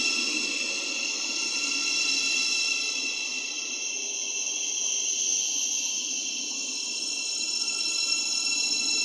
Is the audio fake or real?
real